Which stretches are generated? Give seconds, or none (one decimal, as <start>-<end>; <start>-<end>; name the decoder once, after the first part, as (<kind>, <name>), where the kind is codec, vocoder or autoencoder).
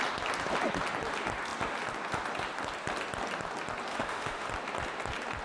3.9-4.5 (autoencoder, DAC-VAE)